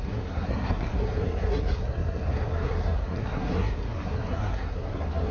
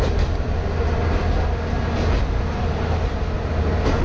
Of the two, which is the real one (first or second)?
second